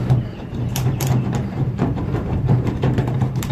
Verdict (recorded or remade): remade